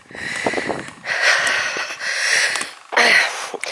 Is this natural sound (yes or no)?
yes